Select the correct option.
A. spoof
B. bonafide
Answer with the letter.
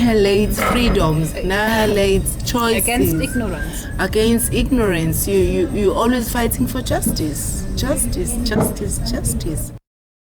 A